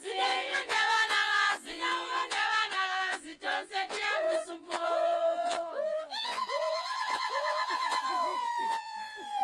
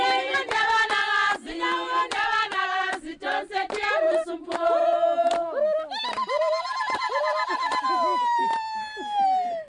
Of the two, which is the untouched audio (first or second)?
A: second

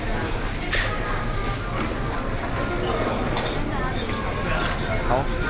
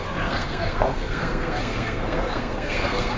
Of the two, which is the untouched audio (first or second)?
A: first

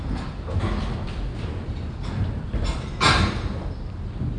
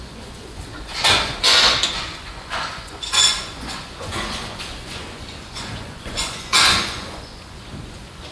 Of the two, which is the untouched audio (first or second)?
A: first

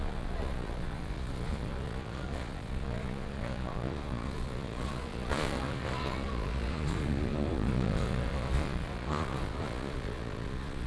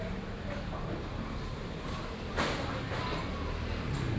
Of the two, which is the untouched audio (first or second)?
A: second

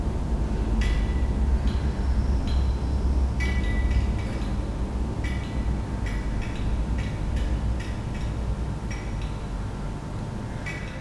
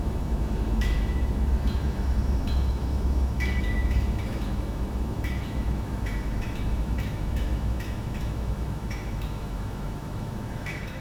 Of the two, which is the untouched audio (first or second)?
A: first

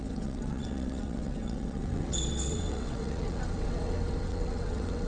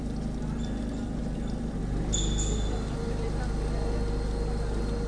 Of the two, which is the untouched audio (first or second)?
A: second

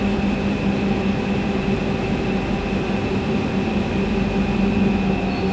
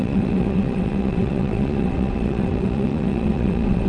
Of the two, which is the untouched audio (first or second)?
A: first